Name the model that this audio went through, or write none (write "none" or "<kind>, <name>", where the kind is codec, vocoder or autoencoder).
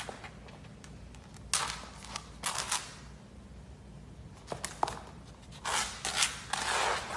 none